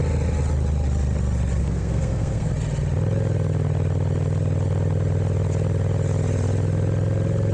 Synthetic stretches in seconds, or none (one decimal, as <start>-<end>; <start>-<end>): 1.6-2.5